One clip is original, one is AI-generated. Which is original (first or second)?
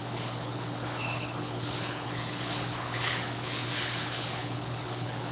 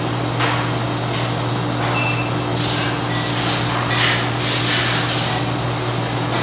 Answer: second